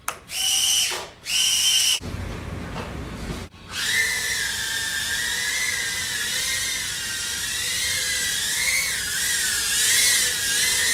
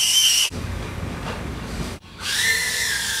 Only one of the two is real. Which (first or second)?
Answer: first